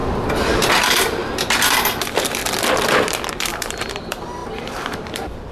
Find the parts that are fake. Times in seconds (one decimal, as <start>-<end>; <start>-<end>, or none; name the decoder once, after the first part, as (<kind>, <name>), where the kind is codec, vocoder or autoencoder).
0.7-1.2 (vocoder, BigVGAN v2); 1.9-2.4; 3.3-5.5